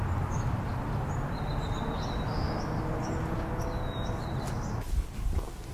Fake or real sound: real